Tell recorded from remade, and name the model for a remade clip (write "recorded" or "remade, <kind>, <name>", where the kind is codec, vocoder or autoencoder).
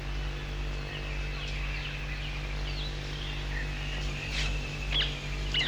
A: recorded